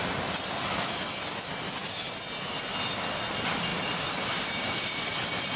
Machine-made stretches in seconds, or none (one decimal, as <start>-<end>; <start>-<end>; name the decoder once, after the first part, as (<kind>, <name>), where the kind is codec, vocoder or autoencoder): 3.7-5.6 (vocoder, BigVGAN v2)